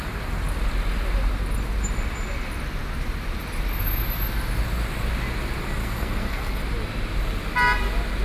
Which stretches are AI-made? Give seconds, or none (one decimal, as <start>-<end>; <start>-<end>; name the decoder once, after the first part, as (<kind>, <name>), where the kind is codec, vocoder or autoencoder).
5.8-6.6 (codec, SNAC)